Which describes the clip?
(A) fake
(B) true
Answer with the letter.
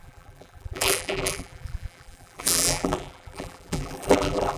A